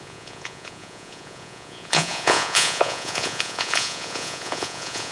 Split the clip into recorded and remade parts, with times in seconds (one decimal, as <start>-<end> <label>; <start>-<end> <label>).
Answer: 0.0-5.1 remade